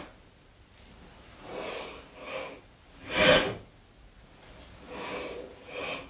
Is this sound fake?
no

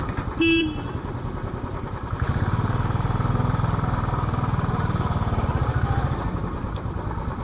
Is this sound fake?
yes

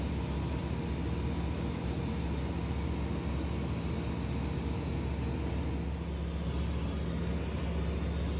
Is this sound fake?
no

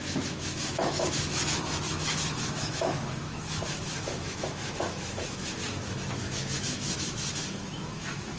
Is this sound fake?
yes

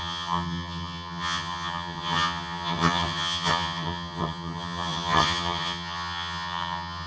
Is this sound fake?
yes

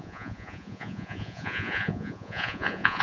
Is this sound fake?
yes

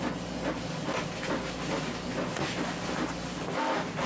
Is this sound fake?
no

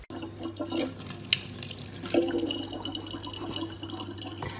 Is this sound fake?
no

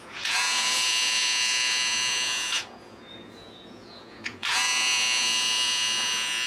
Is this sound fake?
yes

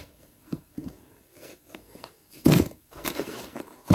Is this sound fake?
yes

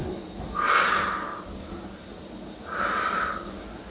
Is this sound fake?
no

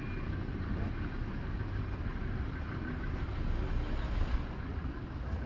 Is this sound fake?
no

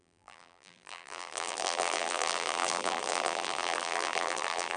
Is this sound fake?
yes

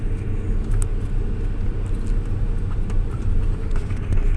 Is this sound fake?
no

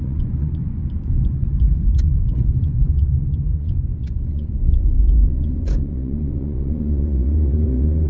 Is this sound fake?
yes